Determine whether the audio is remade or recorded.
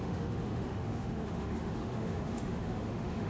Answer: remade